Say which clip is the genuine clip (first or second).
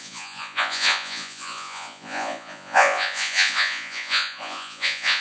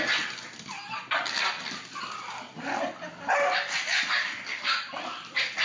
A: second